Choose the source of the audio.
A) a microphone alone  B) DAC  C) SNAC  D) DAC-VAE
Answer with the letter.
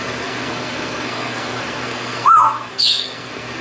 C